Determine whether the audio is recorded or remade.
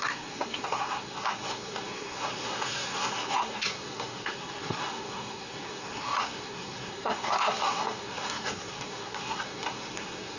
remade